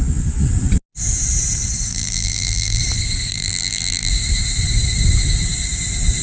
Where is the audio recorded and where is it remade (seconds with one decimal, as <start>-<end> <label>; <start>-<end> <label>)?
0.0-1.9 recorded; 1.9-2.8 remade; 2.8-3.3 recorded; 3.3-4.1 remade; 4.1-6.2 recorded